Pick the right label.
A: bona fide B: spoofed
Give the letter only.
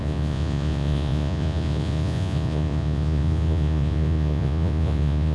B